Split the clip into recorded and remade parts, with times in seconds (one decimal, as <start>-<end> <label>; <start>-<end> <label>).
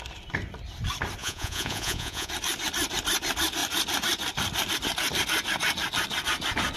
0.0-1.2 recorded; 1.2-2.3 remade; 2.3-6.8 recorded